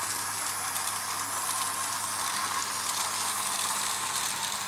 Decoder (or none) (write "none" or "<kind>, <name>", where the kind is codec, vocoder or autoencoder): none